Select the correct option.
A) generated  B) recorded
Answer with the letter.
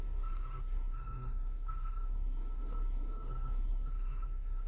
A